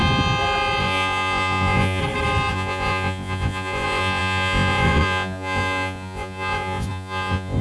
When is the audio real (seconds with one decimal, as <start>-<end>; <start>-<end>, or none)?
0.0-0.8; 2.0-2.5